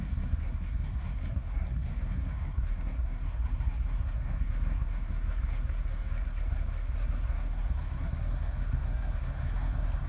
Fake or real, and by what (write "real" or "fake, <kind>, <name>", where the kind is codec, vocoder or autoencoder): fake, codec, SNAC